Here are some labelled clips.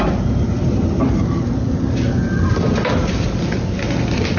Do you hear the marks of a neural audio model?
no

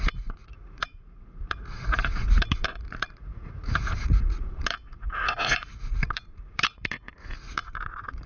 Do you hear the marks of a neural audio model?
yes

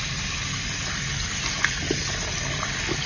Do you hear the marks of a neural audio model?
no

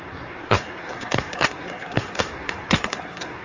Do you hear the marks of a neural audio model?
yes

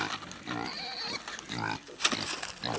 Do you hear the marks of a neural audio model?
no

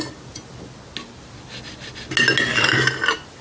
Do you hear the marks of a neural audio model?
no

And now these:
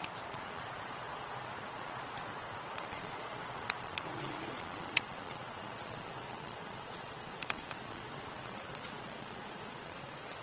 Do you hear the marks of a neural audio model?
yes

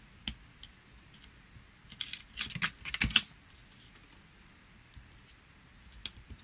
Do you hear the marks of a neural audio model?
no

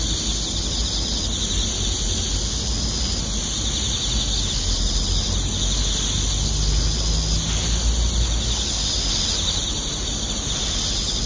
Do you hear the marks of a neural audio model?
no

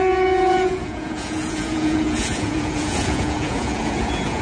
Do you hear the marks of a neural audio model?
yes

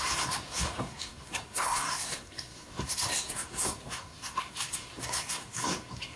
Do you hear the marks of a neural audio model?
yes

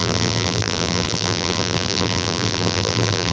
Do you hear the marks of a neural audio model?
yes